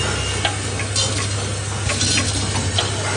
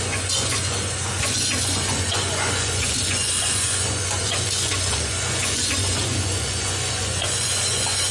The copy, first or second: second